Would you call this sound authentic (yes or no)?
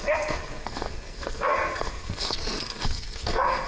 no